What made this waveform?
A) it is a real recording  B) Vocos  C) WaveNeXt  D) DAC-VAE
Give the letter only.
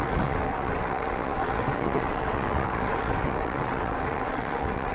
C